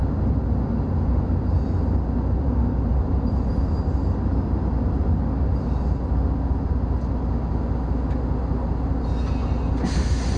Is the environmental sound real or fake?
real